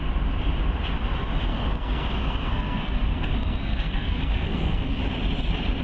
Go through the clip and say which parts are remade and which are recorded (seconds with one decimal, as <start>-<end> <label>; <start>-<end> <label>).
0.0-1.5 recorded; 1.5-5.0 remade; 5.0-5.8 recorded